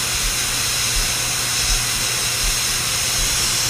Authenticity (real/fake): real